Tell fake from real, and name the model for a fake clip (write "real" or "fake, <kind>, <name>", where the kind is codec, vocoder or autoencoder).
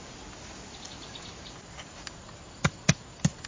real